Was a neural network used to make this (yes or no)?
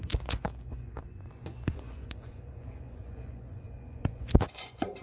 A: yes